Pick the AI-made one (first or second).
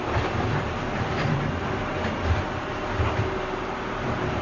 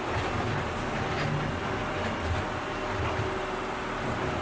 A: first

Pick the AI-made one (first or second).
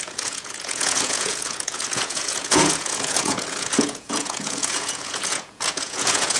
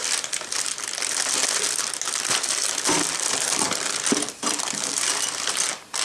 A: first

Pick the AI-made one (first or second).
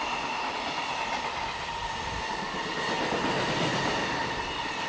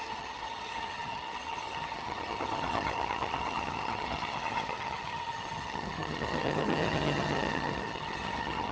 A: second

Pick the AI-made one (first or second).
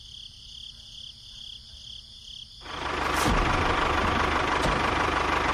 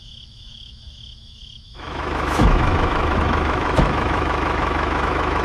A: second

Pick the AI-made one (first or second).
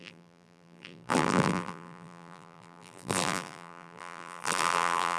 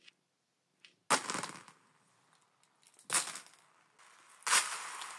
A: first